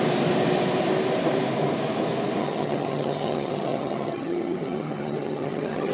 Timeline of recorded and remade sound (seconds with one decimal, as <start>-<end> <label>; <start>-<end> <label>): 0.0-2.4 recorded; 2.4-5.9 remade